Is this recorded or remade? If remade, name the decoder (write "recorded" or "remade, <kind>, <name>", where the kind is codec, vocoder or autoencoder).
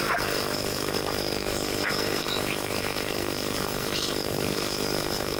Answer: remade, codec, SNAC